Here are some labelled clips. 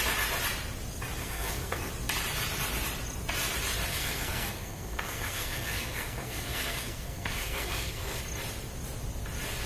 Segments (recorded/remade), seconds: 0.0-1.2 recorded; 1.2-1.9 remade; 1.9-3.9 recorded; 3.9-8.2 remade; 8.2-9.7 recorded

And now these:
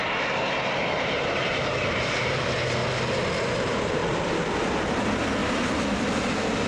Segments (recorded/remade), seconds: 0.0-0.8 recorded; 0.8-2.8 remade; 2.8-3.6 recorded; 3.6-4.0 remade; 4.0-4.9 recorded; 4.9-5.4 remade; 5.4-6.3 recorded; 6.3-6.7 remade

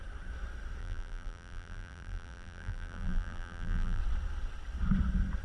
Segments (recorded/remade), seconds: 0.0-0.8 recorded; 0.8-4.0 remade; 4.0-5.4 recorded

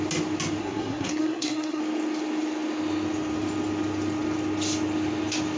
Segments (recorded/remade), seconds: 0.0-0.6 recorded; 0.6-1.8 remade; 1.8-5.6 recorded

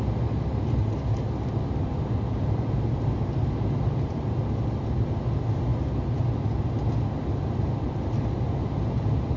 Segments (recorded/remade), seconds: 0.0-9.4 recorded

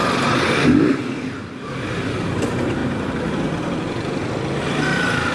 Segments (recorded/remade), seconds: 0.0-2.8 recorded; 2.8-3.5 remade; 3.5-5.3 recorded

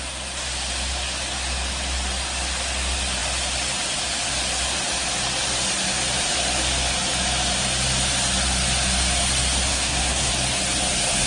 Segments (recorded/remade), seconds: 0.0-9.7 recorded; 9.7-10.3 remade; 10.3-11.3 recorded